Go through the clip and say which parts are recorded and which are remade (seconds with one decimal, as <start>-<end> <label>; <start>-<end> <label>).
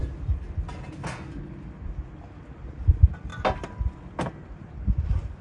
0.0-5.4 recorded